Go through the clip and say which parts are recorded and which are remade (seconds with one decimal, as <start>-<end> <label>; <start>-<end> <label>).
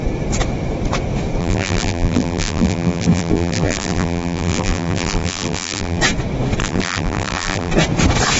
0.0-1.4 recorded; 1.4-6.0 remade; 6.0-6.6 recorded; 6.6-7.7 remade; 7.7-8.4 recorded